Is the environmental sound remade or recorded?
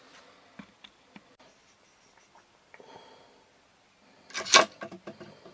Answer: recorded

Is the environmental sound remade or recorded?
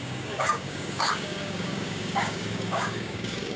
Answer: remade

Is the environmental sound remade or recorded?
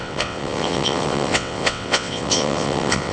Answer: remade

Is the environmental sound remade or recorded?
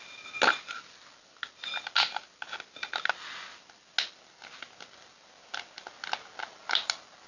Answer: recorded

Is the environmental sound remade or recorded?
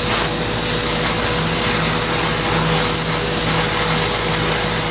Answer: recorded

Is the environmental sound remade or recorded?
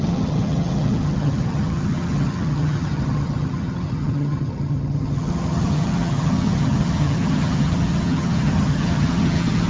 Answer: remade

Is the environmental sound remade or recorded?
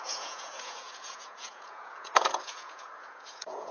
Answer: remade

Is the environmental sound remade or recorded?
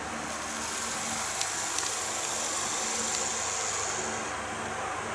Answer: recorded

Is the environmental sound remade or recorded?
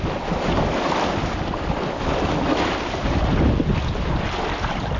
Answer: recorded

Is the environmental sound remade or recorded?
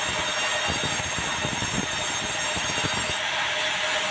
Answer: recorded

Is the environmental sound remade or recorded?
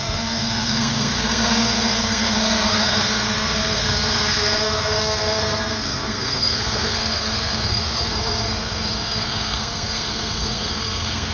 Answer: remade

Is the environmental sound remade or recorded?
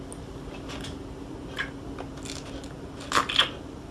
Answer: recorded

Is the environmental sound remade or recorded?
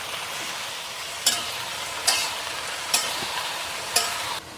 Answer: remade